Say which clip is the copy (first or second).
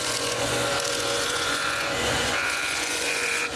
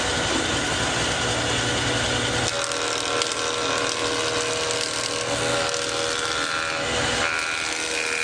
first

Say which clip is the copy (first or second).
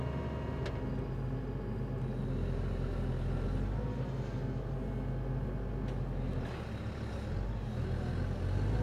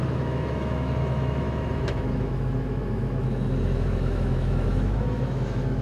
second